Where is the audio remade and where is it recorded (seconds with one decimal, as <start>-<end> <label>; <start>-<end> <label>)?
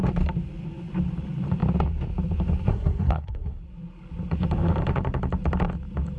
0.0-2.7 recorded; 2.7-3.6 remade; 3.6-6.2 recorded